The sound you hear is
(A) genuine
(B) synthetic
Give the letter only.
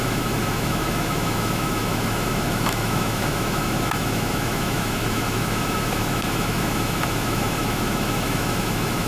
B